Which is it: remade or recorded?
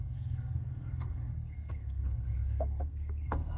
remade